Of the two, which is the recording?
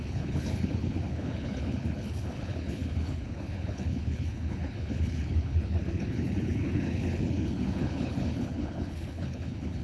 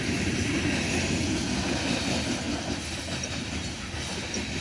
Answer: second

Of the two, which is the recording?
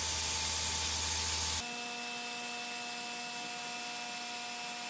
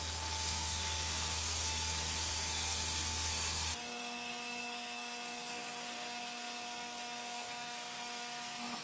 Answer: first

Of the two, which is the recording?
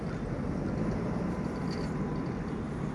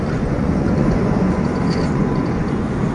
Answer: first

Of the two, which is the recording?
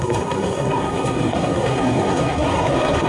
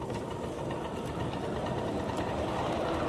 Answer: second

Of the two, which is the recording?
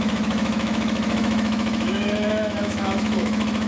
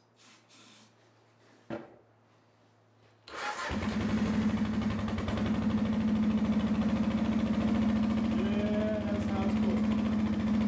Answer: second